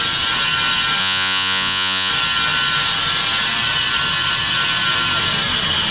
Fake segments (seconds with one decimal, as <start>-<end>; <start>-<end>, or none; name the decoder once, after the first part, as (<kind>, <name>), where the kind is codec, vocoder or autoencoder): 1.0-2.1 (vocoder, Vocos)